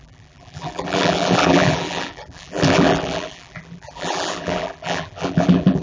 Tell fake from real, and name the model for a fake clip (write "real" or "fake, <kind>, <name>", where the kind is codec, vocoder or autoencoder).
fake, vocoder, BigVGAN v2